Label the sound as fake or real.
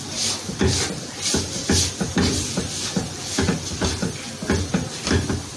real